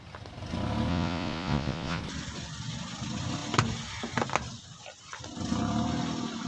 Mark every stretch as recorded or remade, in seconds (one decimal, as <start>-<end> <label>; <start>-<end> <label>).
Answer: 0.0-0.9 recorded; 0.9-2.0 remade; 2.0-6.5 recorded